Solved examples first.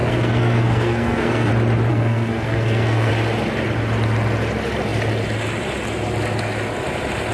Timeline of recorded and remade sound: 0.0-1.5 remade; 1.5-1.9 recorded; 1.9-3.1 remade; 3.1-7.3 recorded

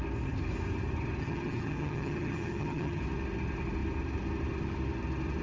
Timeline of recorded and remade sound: 0.0-1.2 recorded; 1.2-3.0 remade; 3.0-5.4 recorded

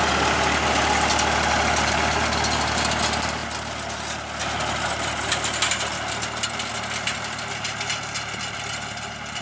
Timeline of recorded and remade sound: 0.0-9.4 recorded

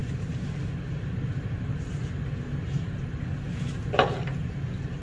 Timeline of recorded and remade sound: 0.0-5.0 recorded

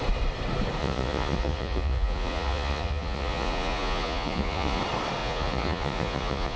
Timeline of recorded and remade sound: 0.0-0.8 recorded; 0.8-4.8 remade; 4.8-5.2 recorded; 5.2-6.6 remade

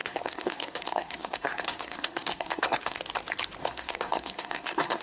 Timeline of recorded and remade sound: 0.0-3.0 remade; 3.0-3.6 recorded; 3.6-5.0 remade